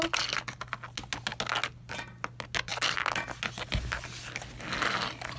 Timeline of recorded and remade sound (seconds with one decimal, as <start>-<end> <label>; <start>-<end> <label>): 0.0-5.4 recorded